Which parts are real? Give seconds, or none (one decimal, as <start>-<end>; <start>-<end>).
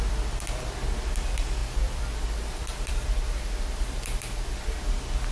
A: 0.0-1.6; 4.8-5.3